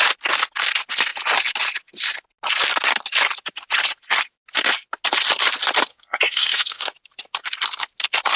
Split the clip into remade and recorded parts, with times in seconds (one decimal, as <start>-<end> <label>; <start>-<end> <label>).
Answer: 0.0-5.9 recorded; 5.9-6.9 remade; 6.9-8.4 recorded